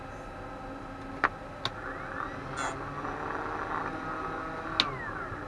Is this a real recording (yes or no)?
yes